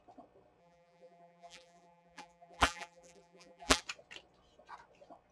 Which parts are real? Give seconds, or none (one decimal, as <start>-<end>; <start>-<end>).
0.0-0.6; 3.8-5.3